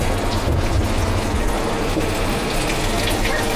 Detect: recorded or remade recorded